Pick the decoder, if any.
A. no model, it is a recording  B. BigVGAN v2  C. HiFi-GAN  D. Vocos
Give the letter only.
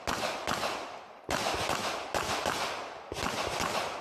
A